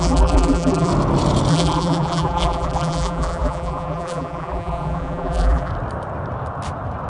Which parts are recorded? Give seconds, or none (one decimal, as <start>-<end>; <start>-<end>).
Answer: 0.9-1.5; 5.7-7.1